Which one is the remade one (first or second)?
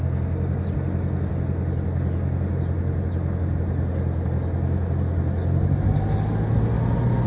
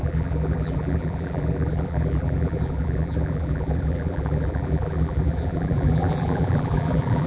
second